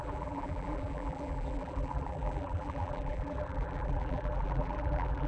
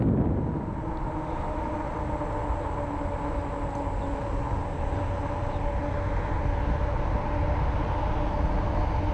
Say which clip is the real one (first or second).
second